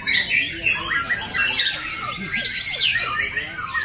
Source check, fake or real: real